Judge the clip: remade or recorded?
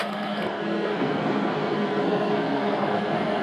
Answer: remade